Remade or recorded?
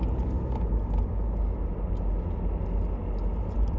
recorded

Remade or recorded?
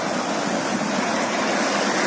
recorded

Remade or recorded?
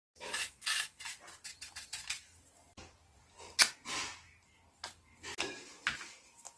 recorded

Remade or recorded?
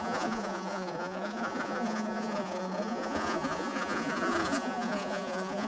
remade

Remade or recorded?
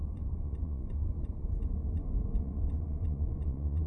remade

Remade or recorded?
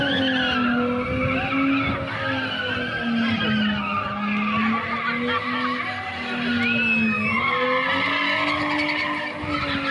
recorded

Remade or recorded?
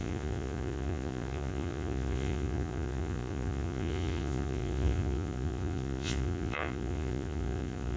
remade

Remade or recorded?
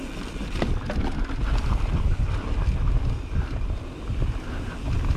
recorded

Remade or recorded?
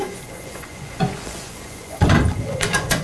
remade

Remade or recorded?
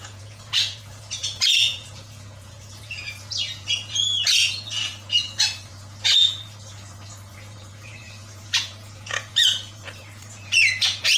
remade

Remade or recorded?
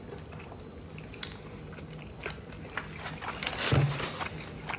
recorded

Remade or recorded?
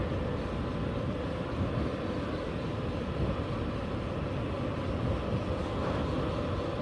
recorded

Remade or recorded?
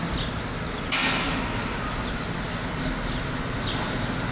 recorded